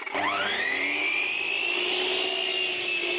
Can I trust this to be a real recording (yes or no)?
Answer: yes